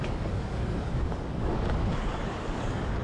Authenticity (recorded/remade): remade